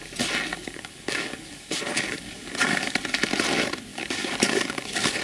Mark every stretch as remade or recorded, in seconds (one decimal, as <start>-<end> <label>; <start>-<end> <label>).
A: 0.0-0.5 recorded; 0.5-3.0 remade; 3.0-3.9 recorded; 3.9-5.2 remade